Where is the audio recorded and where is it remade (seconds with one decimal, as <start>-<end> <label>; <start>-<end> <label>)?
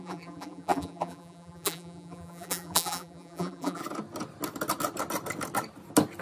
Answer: 0.0-3.8 remade; 3.8-6.2 recorded